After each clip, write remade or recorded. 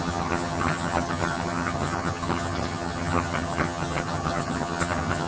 remade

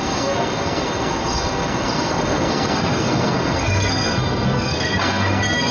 remade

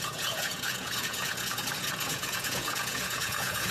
remade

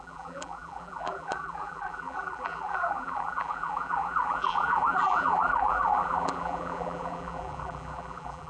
remade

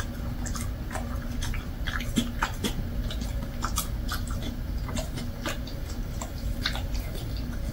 recorded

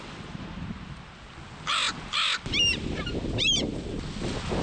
recorded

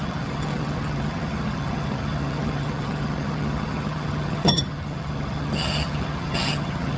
remade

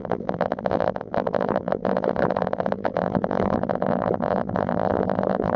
remade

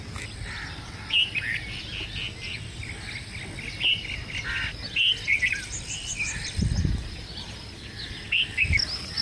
recorded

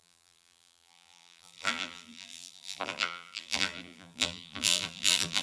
remade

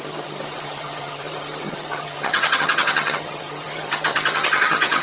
remade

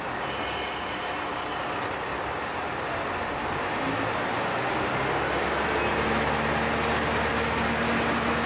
recorded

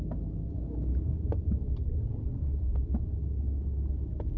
recorded